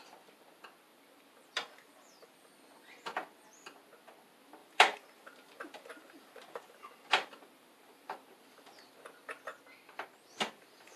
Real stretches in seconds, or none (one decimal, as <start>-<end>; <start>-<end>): 0.0-0.9; 2.5-4.6; 8.3-11.0